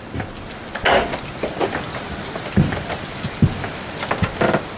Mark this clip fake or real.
real